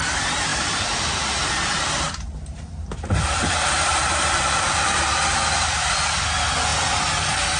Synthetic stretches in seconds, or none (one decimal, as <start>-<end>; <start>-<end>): 0.5-5.1